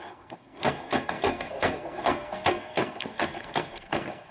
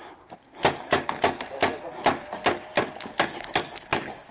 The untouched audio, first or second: second